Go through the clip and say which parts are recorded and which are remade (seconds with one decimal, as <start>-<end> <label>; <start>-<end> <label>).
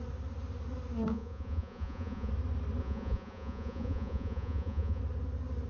0.0-1.1 recorded; 1.1-2.3 remade; 2.3-2.8 recorded; 2.8-5.0 remade; 5.0-5.7 recorded